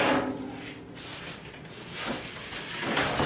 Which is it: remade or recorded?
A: recorded